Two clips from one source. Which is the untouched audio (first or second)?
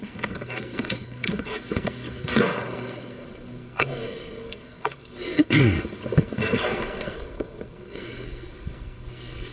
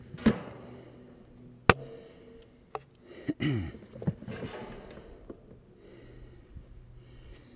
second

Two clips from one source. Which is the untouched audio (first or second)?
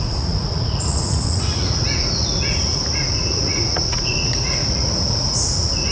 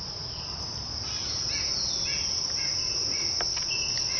second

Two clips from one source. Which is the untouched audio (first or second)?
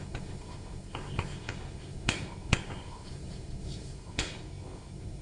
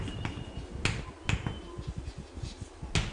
second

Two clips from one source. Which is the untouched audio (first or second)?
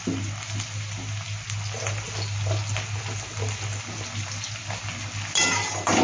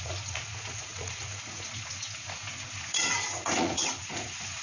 first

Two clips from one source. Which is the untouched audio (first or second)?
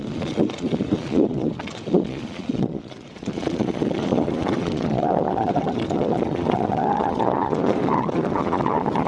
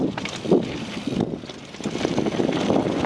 second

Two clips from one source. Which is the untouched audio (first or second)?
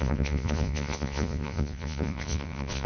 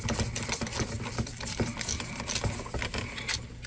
second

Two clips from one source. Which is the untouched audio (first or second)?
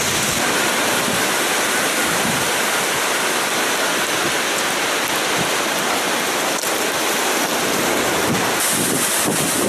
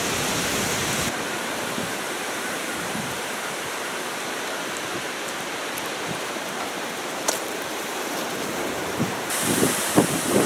first